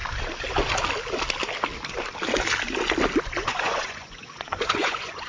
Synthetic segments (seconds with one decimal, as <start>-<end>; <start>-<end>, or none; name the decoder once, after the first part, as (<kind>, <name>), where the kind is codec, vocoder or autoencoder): 3.2-5.3 (vocoder, Vocos)